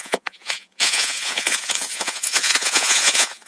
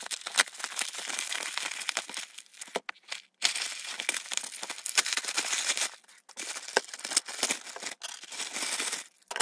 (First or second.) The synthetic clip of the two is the first